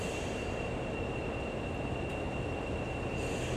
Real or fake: real